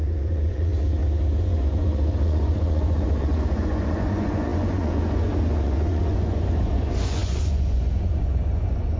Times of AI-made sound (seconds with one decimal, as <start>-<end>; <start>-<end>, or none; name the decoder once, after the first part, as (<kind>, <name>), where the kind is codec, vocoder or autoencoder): 0.0-0.7 (vocoder, Vocos); 1.4-9.0